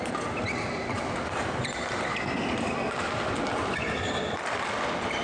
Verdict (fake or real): real